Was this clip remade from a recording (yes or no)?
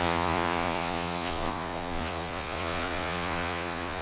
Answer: yes